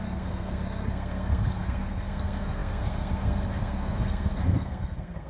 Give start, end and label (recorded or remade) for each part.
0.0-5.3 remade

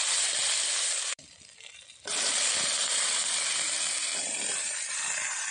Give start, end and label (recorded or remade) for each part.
0.0-5.5 remade

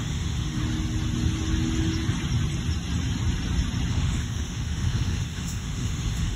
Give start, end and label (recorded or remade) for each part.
0.0-0.6 remade; 0.6-3.9 recorded; 3.9-6.4 remade